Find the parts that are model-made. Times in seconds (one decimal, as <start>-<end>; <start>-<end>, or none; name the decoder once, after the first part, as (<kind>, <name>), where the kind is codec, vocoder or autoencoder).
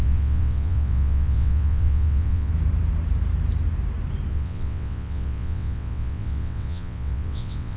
0.0-2.5 (vocoder, WaveNeXt); 4.3-7.8